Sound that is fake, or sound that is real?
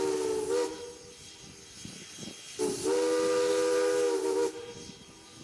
real